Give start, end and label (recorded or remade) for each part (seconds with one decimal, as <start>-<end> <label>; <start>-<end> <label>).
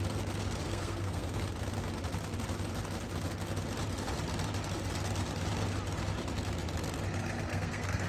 0.0-0.7 recorded; 0.7-1.4 remade; 1.4-7.5 recorded; 7.5-8.1 remade